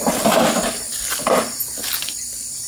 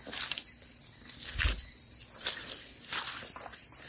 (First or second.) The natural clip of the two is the first